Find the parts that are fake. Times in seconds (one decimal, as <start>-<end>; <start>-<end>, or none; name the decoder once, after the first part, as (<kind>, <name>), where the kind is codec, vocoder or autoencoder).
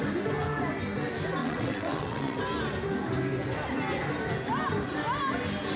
1.4-2.4 (vocoder, WaveNeXt)